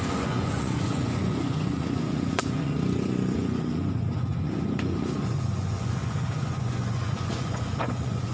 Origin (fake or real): fake